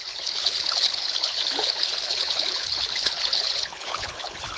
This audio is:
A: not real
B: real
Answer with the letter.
A